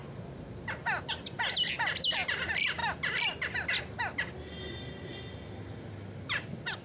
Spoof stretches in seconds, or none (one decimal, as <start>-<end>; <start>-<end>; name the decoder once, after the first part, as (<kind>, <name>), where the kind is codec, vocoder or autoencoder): none

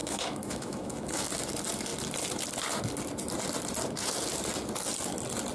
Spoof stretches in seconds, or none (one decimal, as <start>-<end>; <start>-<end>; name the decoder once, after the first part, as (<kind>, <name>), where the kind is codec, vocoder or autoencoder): 0.0-1.4 (autoencoder, DAC-VAE)

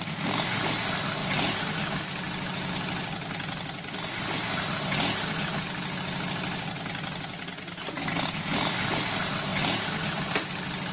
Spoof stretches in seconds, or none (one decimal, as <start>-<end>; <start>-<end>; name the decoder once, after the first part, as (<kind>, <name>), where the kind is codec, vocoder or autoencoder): none

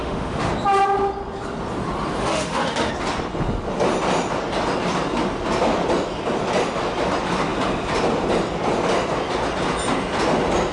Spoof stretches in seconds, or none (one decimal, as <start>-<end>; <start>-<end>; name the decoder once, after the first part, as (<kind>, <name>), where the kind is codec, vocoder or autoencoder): 0.0-0.5 (autoencoder, DAC-VAE); 2.2-2.9

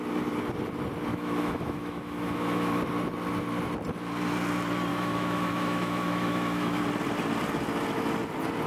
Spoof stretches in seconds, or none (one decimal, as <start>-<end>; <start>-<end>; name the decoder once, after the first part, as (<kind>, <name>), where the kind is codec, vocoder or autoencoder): 1.1-2.8 (autoencoder, DAC-VAE); 4.9-6.8

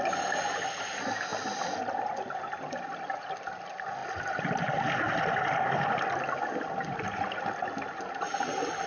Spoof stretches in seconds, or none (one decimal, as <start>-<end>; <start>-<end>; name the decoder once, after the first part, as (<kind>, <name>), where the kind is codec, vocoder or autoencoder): none